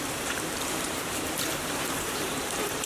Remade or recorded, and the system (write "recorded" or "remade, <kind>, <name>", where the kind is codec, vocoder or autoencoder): remade, vocoder, BigVGAN v2